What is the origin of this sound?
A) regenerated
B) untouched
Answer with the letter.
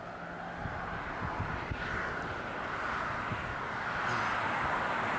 B